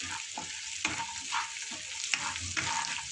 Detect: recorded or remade recorded